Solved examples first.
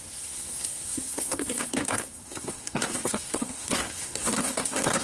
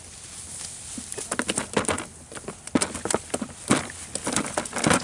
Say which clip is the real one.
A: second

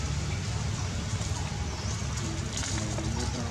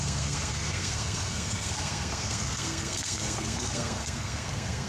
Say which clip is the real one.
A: first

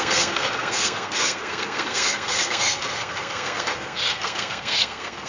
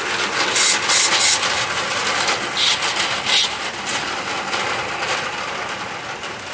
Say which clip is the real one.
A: second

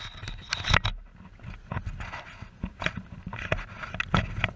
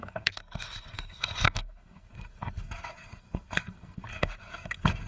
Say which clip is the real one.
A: first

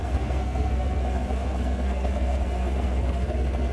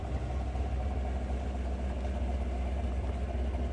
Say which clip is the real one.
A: second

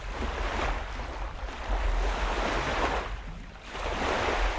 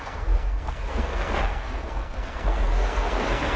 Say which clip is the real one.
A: first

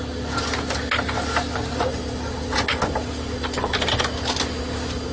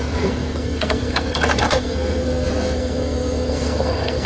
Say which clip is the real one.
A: first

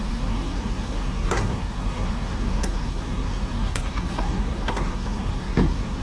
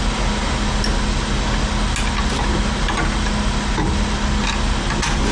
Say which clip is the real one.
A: second